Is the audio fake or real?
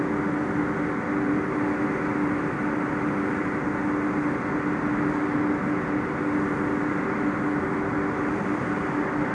real